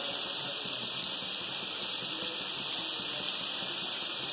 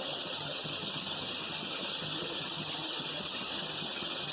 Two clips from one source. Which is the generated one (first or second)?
second